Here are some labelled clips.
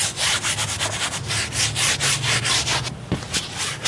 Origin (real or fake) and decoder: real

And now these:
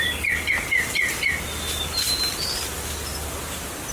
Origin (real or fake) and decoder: real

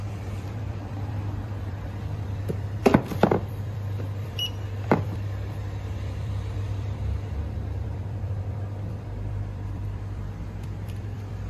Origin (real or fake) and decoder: fake, vocoder, BigVGAN v2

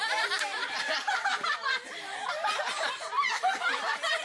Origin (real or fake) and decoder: fake, vocoder, BigVGAN v2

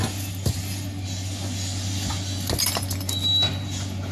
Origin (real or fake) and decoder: real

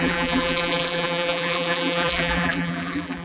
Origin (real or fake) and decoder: fake, vocoder, BigVGAN v2